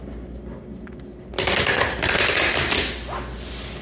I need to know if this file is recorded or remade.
recorded